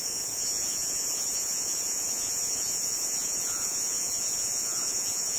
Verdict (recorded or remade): remade